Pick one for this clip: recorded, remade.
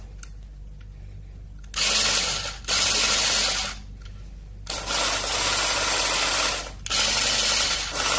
recorded